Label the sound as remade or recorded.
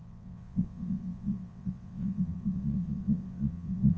remade